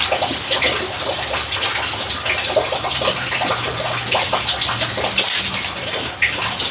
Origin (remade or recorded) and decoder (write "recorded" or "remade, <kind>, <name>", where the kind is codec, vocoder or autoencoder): recorded